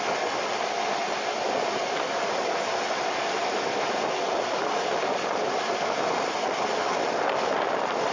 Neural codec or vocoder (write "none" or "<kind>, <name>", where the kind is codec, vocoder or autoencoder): none